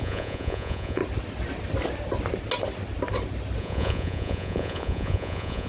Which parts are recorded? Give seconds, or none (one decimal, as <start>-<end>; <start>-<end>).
1.0-3.6